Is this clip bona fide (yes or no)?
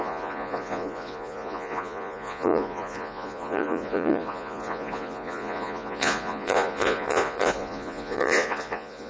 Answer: no